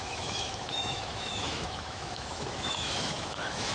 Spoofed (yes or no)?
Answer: yes